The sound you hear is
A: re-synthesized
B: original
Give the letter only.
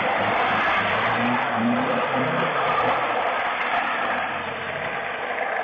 A